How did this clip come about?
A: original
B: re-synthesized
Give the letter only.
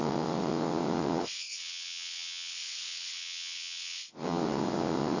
B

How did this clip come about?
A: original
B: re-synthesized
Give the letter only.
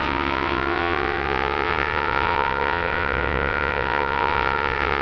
B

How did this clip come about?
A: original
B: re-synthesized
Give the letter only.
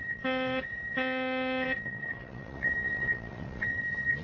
B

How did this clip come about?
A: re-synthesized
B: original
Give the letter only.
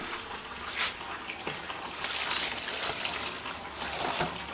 B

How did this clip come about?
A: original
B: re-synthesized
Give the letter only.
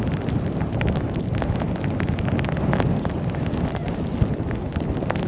A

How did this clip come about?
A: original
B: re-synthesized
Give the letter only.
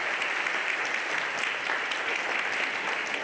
A